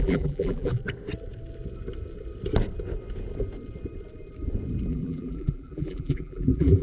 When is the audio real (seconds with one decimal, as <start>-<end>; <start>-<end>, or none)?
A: 0.8-4.9